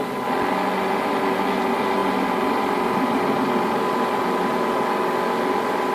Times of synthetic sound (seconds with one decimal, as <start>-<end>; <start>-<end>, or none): none